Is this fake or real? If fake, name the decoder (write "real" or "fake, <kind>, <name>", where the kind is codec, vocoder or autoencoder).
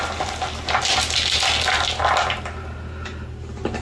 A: real